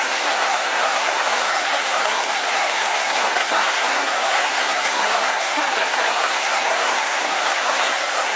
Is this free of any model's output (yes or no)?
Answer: no